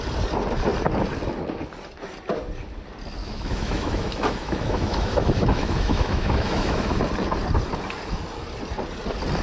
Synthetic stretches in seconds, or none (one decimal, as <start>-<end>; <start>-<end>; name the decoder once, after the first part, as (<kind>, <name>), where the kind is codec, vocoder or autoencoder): 3.2-7.0 (autoencoder, DAC-VAE)